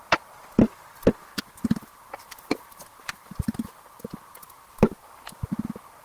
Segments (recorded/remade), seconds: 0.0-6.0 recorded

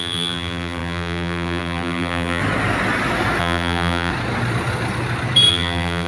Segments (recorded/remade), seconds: 0.0-2.4 remade; 2.4-3.4 recorded; 3.4-4.1 remade; 4.1-5.5 recorded; 5.5-6.1 remade

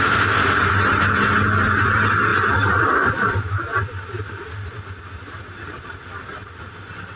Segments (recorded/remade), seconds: 0.0-2.3 recorded; 2.3-6.6 remade; 6.6-7.2 recorded

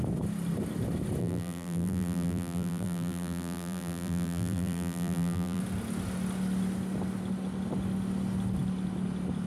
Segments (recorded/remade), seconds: 0.0-1.2 recorded; 1.2-5.6 remade; 5.6-9.5 recorded

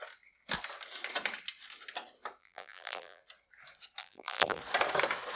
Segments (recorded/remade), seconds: 0.0-2.4 recorded; 2.4-3.2 remade; 3.2-4.0 recorded; 4.0-4.6 remade; 4.6-5.4 recorded

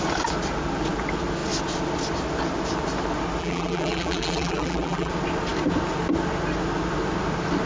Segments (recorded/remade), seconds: 0.0-3.4 recorded; 3.4-5.1 remade; 5.1-7.7 recorded

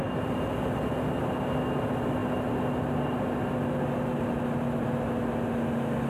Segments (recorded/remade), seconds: 0.0-6.1 recorded